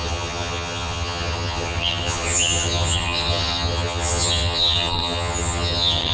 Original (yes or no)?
no